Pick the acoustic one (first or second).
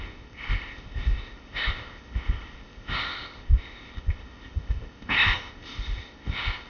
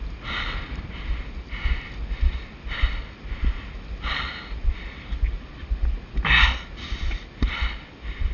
second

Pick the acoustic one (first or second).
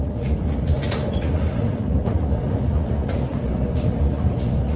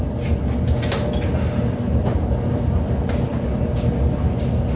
second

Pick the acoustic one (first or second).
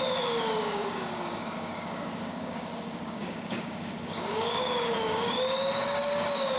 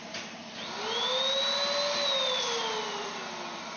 second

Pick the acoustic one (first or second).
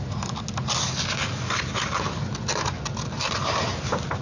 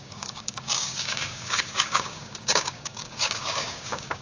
first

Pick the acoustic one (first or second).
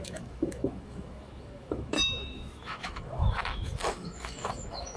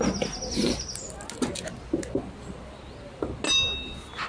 second